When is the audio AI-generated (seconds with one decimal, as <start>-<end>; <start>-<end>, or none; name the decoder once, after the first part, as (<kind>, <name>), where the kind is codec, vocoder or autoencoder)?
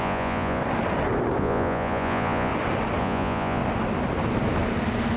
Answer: 0.0-0.6 (vocoder, Vocos); 1.4-2.5; 3.0-3.6